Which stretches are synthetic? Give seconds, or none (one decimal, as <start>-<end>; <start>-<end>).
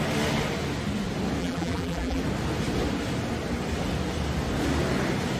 1.4-2.2